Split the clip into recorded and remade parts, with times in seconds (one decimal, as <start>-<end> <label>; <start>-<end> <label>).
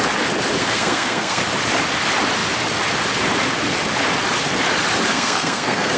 0.0-0.6 recorded; 0.6-1.4 remade; 1.4-5.1 recorded; 5.1-6.0 remade